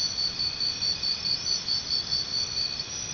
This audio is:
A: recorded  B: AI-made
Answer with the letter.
A